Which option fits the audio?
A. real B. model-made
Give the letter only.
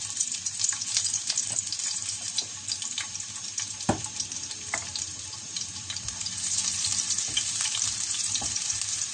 B